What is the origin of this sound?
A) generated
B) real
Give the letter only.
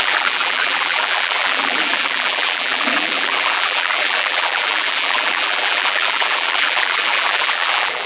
A